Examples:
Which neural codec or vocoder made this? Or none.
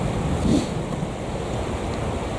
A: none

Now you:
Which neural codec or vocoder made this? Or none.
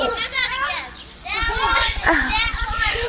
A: vocoder, Vocos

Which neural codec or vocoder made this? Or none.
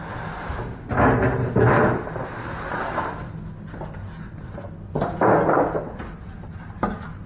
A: none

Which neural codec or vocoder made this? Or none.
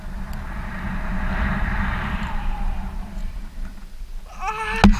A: none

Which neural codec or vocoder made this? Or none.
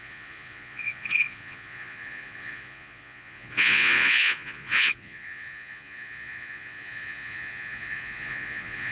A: vocoder, Vocos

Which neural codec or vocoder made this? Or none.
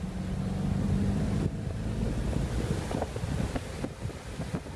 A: none